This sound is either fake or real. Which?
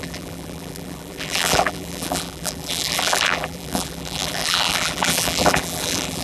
fake